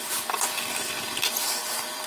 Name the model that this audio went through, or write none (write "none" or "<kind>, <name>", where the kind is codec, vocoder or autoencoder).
vocoder, BigVGAN v2